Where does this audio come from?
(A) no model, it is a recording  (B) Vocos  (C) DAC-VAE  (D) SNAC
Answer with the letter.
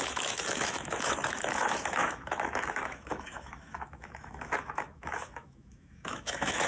C